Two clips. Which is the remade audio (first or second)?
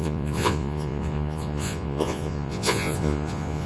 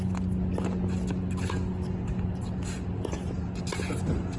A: first